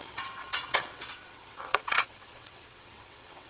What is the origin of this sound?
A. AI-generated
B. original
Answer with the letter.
A